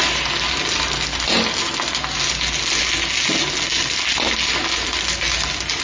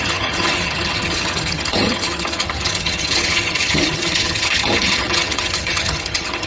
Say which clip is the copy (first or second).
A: second